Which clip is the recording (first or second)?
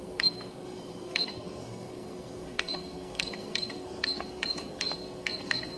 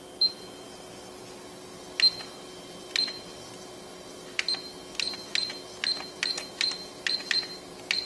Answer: second